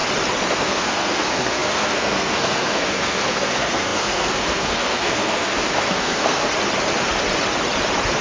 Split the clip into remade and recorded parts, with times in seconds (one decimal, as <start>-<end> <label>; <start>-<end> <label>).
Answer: 0.0-0.5 recorded; 0.5-6.5 remade; 6.5-8.2 recorded